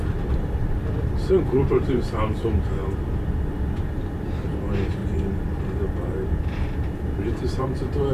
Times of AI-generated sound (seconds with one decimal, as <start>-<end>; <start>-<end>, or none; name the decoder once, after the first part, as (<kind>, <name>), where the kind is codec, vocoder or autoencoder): 0.0-2.8 (vocoder, BigVGAN v2); 3.4-5.0; 6.1-8.1